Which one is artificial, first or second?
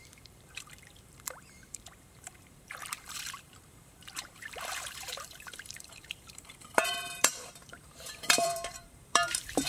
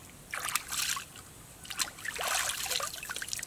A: first